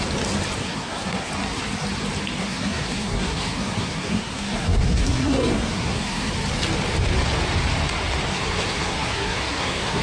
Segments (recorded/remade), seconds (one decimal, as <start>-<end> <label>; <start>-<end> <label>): 0.0-0.6 recorded; 0.6-1.3 remade; 1.3-2.4 recorded; 2.4-6.3 remade; 6.3-8.3 recorded; 8.3-10.0 remade